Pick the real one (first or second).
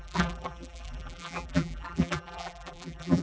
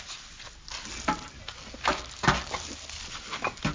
second